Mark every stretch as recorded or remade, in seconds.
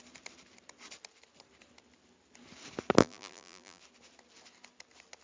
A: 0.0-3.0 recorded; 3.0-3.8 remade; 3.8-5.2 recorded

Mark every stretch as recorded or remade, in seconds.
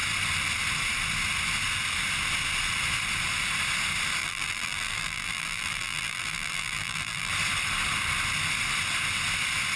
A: 0.0-4.2 recorded; 4.2-7.3 remade; 7.3-9.8 recorded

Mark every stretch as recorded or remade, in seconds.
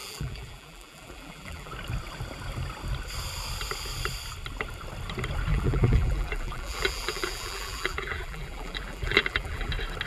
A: 0.0-1.7 remade; 1.7-5.5 recorded; 5.5-9.7 remade; 9.7-10.1 recorded